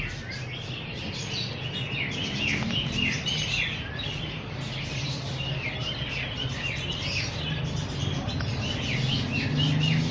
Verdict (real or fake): real